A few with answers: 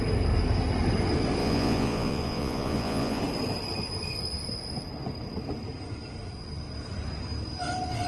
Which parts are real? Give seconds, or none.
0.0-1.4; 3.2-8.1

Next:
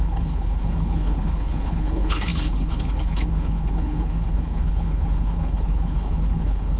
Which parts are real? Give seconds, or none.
none

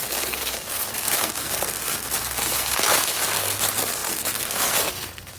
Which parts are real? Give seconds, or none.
none

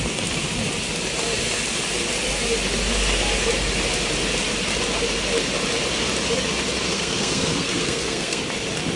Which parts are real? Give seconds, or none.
0.0-6.9; 8.4-9.0

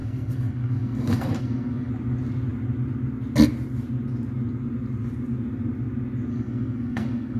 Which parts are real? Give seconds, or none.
1.9-6.3